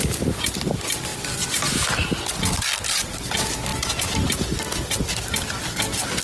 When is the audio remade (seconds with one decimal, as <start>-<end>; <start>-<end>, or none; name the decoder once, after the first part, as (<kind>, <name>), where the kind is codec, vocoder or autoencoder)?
none